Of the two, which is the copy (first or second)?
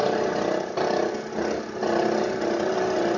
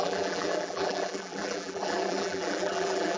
second